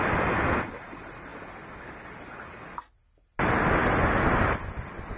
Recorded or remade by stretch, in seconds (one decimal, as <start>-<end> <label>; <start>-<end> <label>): 0.0-5.2 recorded